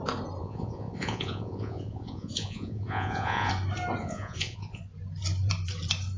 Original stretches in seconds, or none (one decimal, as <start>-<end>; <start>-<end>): 0.0-0.4; 3.5-4.0; 4.8-6.2